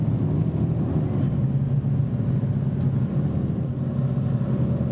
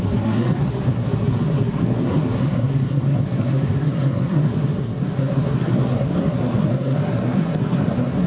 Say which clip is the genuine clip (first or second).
first